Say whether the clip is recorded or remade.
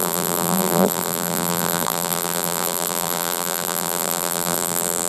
remade